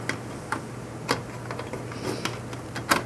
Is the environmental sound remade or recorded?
recorded